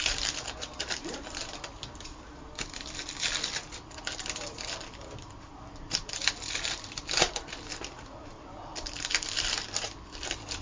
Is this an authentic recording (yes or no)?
no